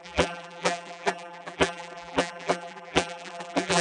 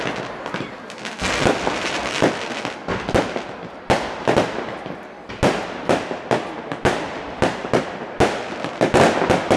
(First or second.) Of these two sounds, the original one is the second